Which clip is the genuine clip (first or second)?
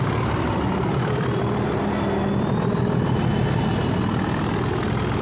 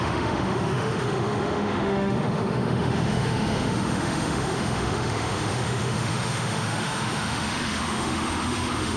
first